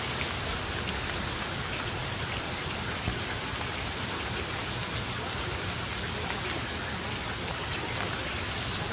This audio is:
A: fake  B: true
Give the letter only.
B